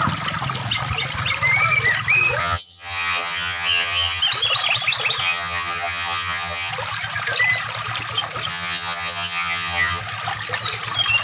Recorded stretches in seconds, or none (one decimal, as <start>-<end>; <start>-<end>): 0.0-2.4; 4.2-5.2; 6.7-8.5; 10.0-11.2